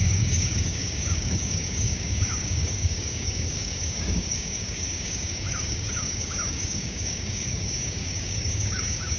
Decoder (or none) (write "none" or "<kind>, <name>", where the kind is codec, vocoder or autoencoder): codec, DAC